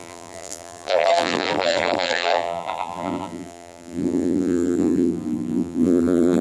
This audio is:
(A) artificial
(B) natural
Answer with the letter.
A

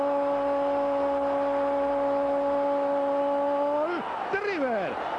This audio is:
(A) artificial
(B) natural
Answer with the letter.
B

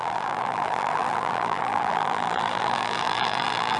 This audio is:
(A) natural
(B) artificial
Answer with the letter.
B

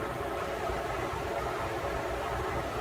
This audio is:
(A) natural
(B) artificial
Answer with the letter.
A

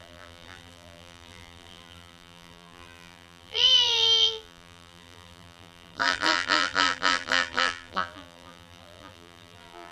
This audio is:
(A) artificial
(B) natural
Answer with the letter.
A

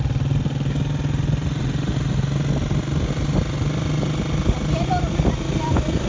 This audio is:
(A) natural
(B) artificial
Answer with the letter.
A